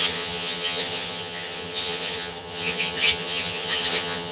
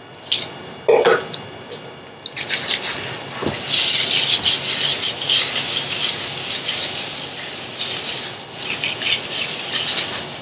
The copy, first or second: first